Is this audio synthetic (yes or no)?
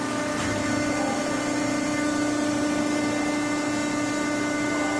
no